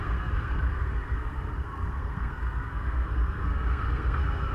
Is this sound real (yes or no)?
no